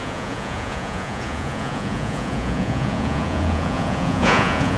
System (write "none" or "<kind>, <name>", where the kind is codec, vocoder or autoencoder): vocoder, Vocos